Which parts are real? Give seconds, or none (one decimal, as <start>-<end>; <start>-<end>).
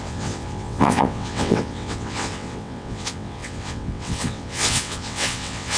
none